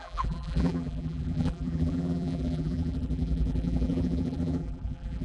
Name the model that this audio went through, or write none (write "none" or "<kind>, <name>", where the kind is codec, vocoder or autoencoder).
vocoder, BigVGAN v2